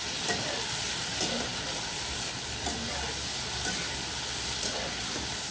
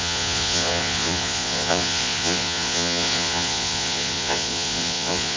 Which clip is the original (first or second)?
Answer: first